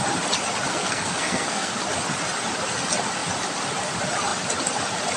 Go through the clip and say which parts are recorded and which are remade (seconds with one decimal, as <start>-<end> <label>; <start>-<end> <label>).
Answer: 0.0-0.7 recorded; 0.7-1.7 remade; 1.7-5.2 recorded

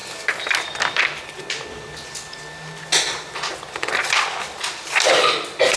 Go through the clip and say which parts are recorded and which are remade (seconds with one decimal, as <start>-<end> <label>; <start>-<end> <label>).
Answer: 0.0-5.8 recorded

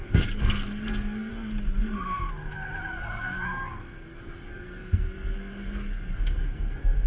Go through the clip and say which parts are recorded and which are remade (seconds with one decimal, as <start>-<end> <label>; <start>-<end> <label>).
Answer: 0.0-1.3 remade; 1.3-1.8 recorded; 1.8-2.2 remade; 2.2-3.0 recorded; 3.0-7.1 remade

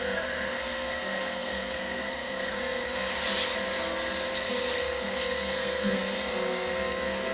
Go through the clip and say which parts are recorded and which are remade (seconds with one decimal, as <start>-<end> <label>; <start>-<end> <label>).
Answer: 0.0-3.1 remade; 3.1-4.8 recorded; 4.8-7.3 remade

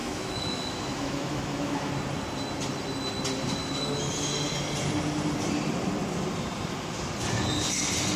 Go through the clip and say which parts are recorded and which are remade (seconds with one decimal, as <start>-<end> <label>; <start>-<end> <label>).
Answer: 0.0-1.9 remade; 1.9-3.6 recorded; 3.6-4.1 remade; 4.1-8.2 recorded

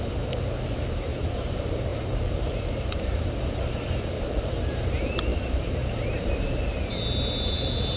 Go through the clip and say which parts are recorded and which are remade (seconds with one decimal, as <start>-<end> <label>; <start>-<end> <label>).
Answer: 0.0-8.0 remade

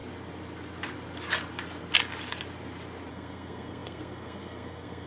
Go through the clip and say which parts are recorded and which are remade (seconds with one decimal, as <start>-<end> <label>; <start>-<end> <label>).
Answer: 0.0-3.1 recorded; 3.1-5.1 remade